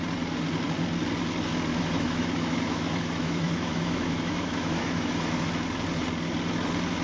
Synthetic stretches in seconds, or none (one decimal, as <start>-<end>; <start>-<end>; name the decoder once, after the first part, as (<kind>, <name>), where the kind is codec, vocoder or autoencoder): 1.7-5.5 (autoencoder, DAC-VAE)